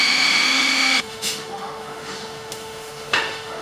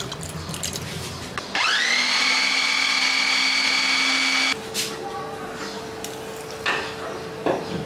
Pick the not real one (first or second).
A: first